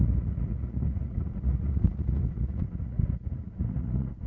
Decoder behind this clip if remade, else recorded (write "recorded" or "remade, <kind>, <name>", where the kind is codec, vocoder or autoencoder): remade, vocoder, Vocos